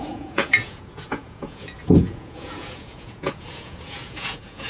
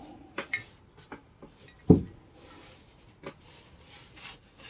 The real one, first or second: second